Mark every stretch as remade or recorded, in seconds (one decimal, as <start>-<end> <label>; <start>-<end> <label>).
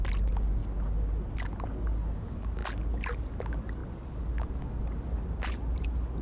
0.0-6.2 recorded